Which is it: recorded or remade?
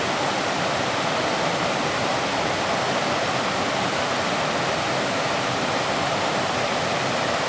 recorded